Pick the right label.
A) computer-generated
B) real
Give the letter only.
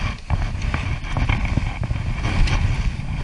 B